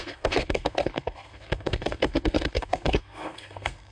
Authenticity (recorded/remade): remade